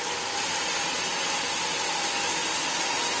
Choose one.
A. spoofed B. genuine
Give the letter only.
B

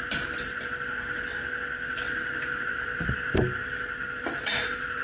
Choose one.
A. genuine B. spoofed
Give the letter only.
A